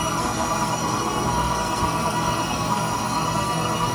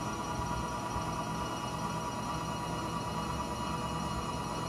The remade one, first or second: first